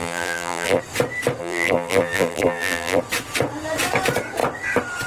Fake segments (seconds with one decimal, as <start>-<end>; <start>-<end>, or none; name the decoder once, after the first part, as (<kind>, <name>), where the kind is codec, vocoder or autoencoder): 0.0-0.8 (vocoder, BigVGAN v2); 1.4-3.0